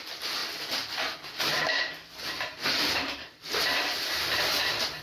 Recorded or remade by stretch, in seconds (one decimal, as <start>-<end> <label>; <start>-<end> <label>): 0.0-2.6 recorded; 2.6-4.4 remade; 4.4-5.0 recorded

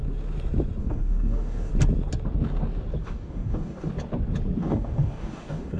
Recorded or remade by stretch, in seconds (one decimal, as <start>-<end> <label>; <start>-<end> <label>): 0.0-0.8 recorded; 0.8-1.7 remade; 1.7-3.0 recorded; 3.0-3.9 remade; 3.9-4.6 recorded; 4.6-5.8 remade

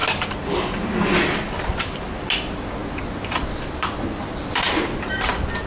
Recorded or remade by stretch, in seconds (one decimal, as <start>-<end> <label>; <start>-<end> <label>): 0.0-5.7 recorded

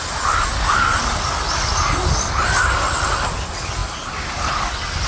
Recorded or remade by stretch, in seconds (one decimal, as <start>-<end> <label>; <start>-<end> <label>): 0.0-5.1 recorded

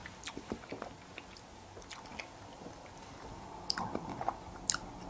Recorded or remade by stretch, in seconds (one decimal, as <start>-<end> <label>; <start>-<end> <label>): 0.0-0.7 remade; 0.7-2.1 recorded; 2.1-4.2 remade; 4.2-5.1 recorded

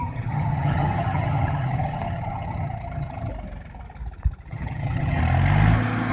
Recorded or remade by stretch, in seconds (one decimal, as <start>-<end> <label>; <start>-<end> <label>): 0.0-3.3 remade; 3.3-4.5 recorded; 4.5-5.2 remade; 5.2-6.1 recorded

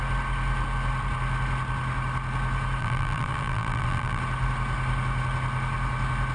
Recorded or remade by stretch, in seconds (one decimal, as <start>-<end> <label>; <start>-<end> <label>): 0.0-2.8 recorded; 2.8-4.2 remade; 4.2-6.3 recorded

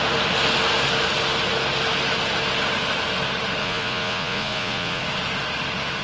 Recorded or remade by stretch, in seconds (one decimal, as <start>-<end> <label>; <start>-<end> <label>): 0.0-3.6 recorded; 3.6-5.0 remade; 5.0-6.0 recorded